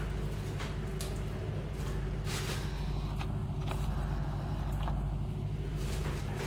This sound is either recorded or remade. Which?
recorded